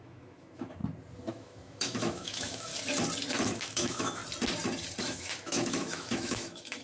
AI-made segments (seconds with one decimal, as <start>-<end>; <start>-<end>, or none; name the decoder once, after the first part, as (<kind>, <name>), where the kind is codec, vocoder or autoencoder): 0.0-0.8 (autoencoder, DAC-VAE); 1.3-2.7; 3.3-4.2; 5.0-6.8